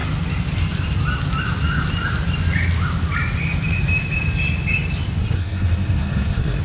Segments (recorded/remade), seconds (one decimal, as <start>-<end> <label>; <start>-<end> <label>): 0.0-5.2 recorded; 5.2-6.6 remade

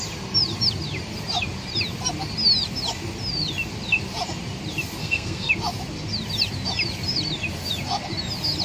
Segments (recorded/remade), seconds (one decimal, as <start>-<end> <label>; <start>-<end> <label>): 0.0-5.0 recorded; 5.0-5.5 remade; 5.5-8.6 recorded

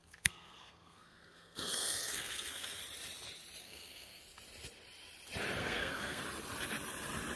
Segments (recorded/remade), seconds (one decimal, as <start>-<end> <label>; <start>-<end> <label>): 0.0-2.8 remade; 2.8-3.6 recorded; 3.6-4.2 remade; 4.2-5.6 recorded; 5.6-6.2 remade; 6.2-7.4 recorded

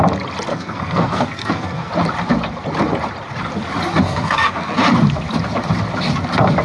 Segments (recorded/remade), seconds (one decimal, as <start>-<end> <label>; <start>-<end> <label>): 0.0-0.5 recorded; 0.5-1.9 remade; 1.9-4.0 recorded; 4.0-4.7 remade; 4.7-6.6 recorded

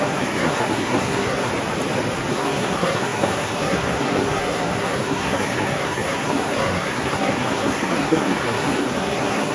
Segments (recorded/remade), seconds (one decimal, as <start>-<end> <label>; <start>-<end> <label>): 0.0-1.5 remade; 1.5-2.3 recorded; 2.3-9.5 remade

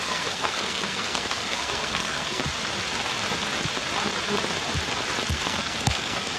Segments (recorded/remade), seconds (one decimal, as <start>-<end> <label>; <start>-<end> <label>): 0.0-2.4 remade; 2.4-5.3 recorded; 5.3-6.4 remade

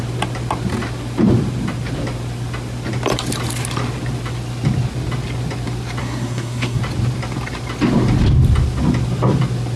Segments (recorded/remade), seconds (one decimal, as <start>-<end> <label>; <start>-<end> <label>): 0.0-6.0 recorded; 6.0-6.8 remade; 6.8-9.8 recorded